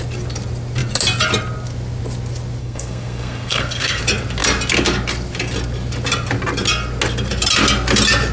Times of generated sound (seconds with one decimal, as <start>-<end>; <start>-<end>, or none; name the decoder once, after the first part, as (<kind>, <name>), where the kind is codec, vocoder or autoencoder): 2.6-4.0 (codec, SNAC)